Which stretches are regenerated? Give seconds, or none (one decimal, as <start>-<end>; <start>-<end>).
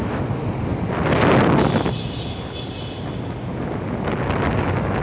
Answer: none